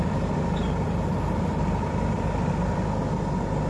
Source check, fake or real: real